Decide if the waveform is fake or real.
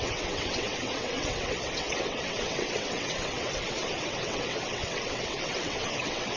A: fake